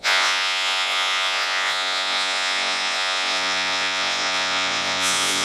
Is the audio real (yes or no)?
no